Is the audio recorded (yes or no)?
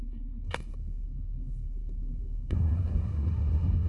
no